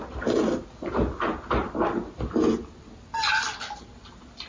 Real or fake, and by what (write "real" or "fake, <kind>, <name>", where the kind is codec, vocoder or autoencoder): real